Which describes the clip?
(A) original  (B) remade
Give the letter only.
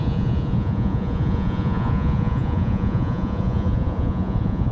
B